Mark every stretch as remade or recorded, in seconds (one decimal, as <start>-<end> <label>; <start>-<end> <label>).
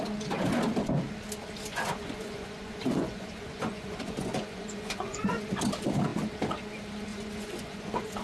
0.0-1.7 recorded; 1.7-5.5 remade; 5.5-7.1 recorded; 7.1-8.2 remade